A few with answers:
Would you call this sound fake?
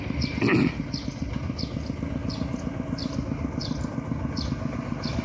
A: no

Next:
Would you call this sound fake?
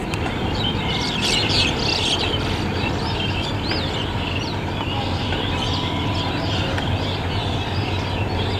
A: no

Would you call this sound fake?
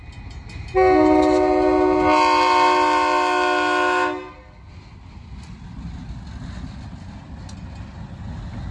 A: no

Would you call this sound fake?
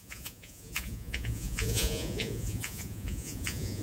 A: yes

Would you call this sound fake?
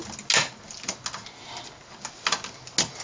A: no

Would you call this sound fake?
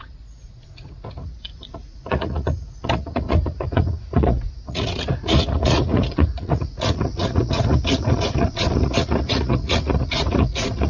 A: yes